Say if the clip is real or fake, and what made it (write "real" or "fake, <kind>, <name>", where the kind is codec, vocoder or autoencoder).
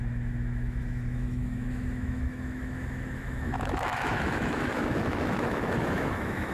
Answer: fake, autoencoder, DAC-VAE